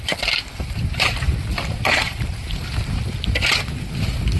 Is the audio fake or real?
real